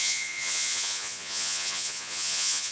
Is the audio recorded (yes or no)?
no